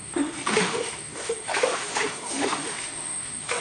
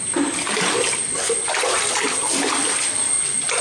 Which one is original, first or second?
second